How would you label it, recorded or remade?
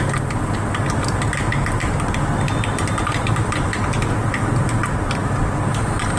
recorded